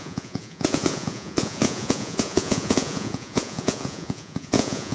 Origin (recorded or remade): remade